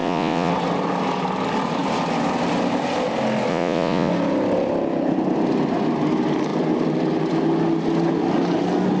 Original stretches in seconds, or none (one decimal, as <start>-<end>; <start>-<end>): 0.5-3.5; 4.1-9.0